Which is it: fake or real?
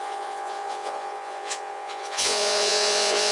fake